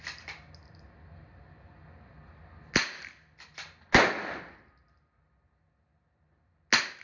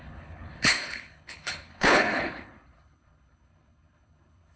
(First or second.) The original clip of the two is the first